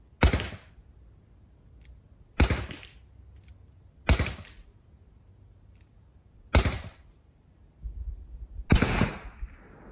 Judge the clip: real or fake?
real